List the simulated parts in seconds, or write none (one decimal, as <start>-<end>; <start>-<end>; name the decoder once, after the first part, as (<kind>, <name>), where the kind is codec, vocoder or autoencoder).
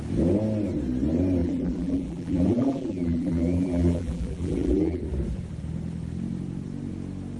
1.4-5.0 (vocoder, BigVGAN v2)